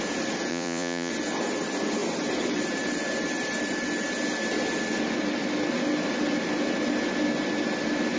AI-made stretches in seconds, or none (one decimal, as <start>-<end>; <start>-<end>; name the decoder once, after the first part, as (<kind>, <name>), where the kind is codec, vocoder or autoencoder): 0.5-1.1 (vocoder, Vocos)